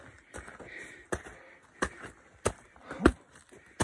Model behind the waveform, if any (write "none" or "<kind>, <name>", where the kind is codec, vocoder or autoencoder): none